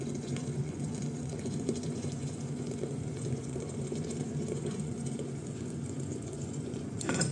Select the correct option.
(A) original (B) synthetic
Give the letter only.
B